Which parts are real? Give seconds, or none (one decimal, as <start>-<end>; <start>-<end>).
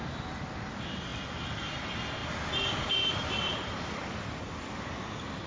0.0-1.1; 1.8-2.2; 4.4-5.5